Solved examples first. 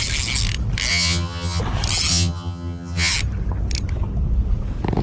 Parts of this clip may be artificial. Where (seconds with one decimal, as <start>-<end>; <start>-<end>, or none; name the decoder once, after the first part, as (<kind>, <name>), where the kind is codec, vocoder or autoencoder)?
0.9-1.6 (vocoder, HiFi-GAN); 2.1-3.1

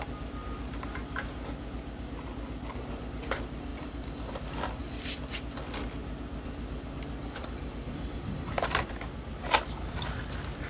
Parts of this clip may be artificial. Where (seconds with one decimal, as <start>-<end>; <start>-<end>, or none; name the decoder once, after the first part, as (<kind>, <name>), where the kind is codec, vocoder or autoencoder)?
3.7-4.3 (vocoder, BigVGAN v2); 4.8-5.6; 7.2-8.9

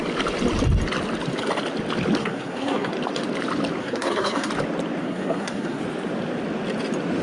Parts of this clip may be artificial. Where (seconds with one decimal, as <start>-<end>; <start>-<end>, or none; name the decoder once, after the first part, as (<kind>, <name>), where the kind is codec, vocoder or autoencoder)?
2.2-2.9 (codec, SNAC); 3.8-4.5; 5.0-5.8

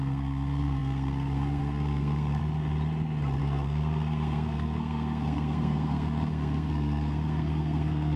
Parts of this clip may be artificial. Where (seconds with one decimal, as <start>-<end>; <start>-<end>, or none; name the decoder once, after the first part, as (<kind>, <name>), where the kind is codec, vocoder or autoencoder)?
0.0-2.4 (codec, SNAC); 3.4-8.2